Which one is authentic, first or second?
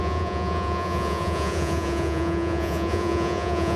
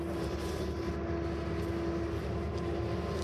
second